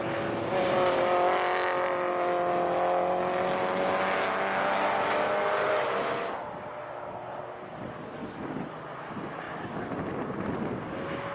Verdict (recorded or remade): recorded